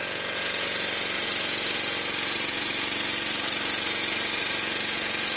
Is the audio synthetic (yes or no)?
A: yes